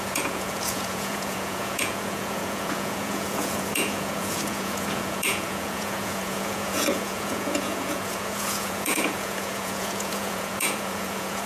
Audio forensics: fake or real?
fake